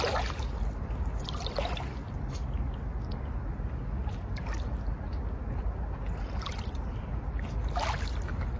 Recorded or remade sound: recorded